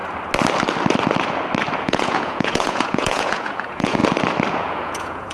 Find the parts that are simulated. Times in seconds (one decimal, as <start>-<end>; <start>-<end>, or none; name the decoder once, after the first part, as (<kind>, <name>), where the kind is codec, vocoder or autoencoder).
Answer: 1.8-4.0 (vocoder, Vocos); 4.5-5.3